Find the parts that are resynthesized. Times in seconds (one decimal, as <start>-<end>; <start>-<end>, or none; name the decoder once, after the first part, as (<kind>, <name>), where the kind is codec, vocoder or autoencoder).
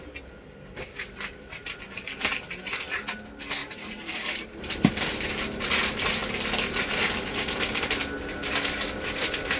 3.6-4.9 (vocoder, BigVGAN v2)